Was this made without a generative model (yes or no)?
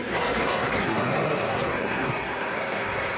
no